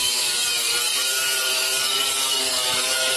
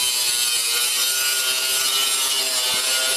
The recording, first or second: second